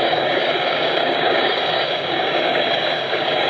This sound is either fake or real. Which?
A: fake